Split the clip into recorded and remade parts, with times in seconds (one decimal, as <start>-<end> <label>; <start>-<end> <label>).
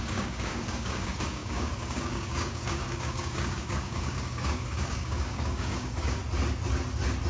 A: 0.0-6.2 remade; 6.2-7.3 recorded